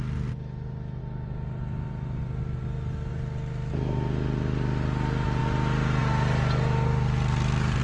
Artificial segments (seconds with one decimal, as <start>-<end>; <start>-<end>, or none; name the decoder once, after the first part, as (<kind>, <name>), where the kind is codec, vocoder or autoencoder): none